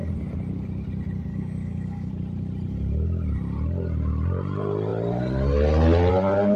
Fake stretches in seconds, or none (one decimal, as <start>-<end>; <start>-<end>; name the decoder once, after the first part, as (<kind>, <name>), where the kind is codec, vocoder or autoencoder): 1.3-2.1 (codec, DAC)